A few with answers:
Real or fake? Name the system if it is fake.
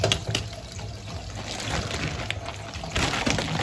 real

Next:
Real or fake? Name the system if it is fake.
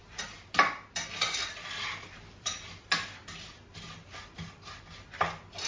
real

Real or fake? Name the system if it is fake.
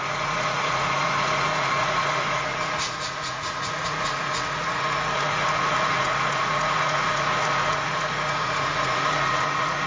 fake, vocoder, Vocos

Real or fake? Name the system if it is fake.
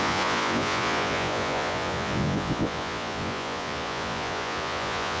fake, vocoder, Vocos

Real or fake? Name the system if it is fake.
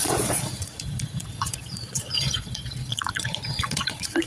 fake, vocoder, Vocos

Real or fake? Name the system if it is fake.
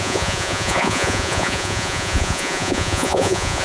fake, vocoder, Vocos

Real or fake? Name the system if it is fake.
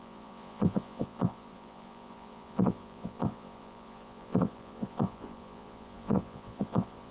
fake, vocoder, Vocos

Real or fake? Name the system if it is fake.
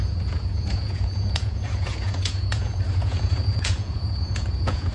fake, vocoder, Vocos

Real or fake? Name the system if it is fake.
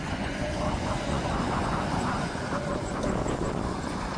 fake, vocoder, Vocos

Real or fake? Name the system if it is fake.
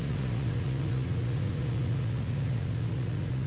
fake, vocoder, Vocos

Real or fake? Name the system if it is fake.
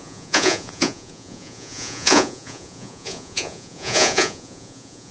fake, vocoder, Vocos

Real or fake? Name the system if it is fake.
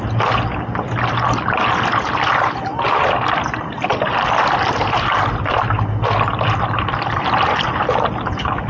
real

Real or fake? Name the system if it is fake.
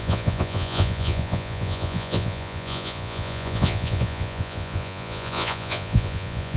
fake, vocoder, Vocos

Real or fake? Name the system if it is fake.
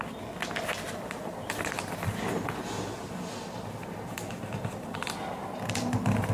real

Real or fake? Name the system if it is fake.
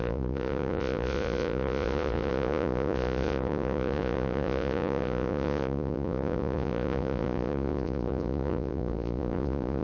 fake, vocoder, Vocos